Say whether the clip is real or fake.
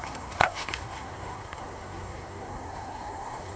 fake